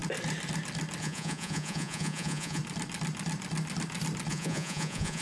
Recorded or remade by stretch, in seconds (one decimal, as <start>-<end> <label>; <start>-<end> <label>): 0.0-1.0 recorded; 1.0-2.6 remade; 2.6-4.3 recorded; 4.3-5.2 remade